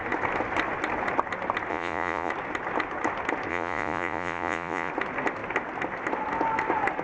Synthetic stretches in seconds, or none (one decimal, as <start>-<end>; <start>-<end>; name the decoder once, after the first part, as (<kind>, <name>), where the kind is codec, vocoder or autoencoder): 1.7-2.3 (vocoder, Vocos); 3.5-4.9